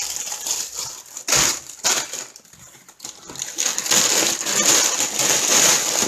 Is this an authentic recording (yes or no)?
yes